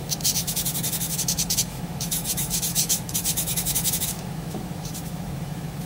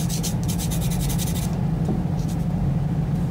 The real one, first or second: second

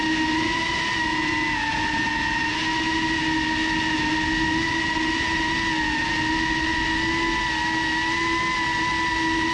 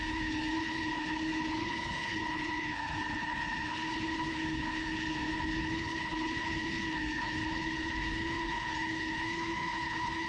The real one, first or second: first